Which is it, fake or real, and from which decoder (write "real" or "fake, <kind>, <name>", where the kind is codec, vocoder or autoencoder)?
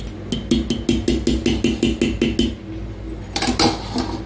real